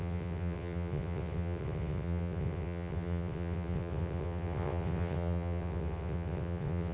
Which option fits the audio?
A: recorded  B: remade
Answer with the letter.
B